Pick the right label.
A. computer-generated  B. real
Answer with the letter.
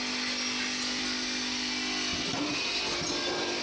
B